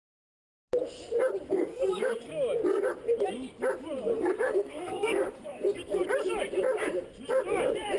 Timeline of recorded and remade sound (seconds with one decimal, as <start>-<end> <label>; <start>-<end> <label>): 0.0-0.5 remade; 0.5-1.5 recorded; 1.5-2.3 remade; 2.3-4.2 recorded; 4.2-6.0 remade; 6.0-8.0 recorded

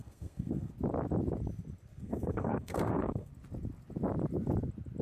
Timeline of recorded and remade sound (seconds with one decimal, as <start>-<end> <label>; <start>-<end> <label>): 0.0-0.7 remade; 0.7-1.9 recorded; 1.9-3.3 remade; 3.3-5.0 recorded

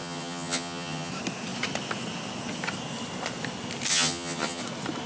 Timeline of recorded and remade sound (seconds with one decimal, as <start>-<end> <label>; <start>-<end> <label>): 0.0-1.1 remade; 1.1-3.9 recorded; 3.9-4.6 remade; 4.6-5.1 recorded

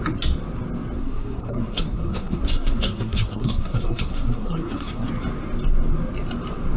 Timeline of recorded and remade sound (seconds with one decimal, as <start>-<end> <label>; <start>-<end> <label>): 0.0-1.0 recorded; 1.0-5.1 remade; 5.1-6.8 recorded

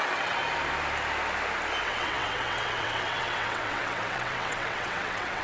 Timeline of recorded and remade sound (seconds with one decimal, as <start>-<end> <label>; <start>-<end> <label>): 0.0-0.4 remade; 0.4-1.8 recorded; 1.8-5.4 remade

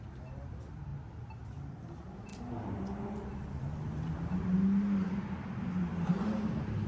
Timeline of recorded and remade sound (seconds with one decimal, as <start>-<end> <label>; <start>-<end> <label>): 0.0-0.9 remade; 0.9-1.7 recorded; 1.7-2.3 remade; 2.3-6.1 recorded; 6.1-6.9 remade

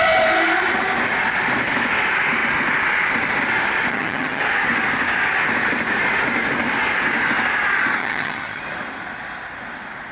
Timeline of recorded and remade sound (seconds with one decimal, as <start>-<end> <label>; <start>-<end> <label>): 0.0-3.9 recorded; 3.9-4.4 remade; 4.4-8.0 recorded; 8.0-8.6 remade; 8.6-10.1 recorded

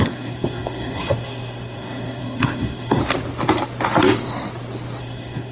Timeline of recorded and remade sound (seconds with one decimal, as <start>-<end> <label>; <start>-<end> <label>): 0.0-3.0 remade; 3.0-5.0 recorded; 5.0-5.5 remade